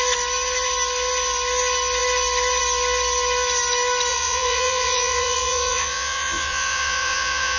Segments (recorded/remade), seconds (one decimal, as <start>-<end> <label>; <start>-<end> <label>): 0.0-4.1 recorded; 4.1-7.6 remade